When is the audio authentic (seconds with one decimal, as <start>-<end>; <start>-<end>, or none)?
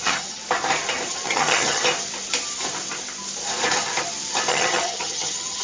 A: 0.4-1.1; 1.8-4.5